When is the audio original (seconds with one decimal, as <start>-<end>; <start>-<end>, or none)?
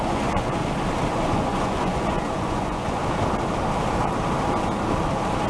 0.6-1.1; 3.0-5.5